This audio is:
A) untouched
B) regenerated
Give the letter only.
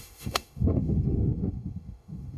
B